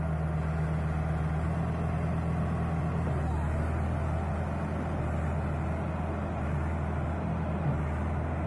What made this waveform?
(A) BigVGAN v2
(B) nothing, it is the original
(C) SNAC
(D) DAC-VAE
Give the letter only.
B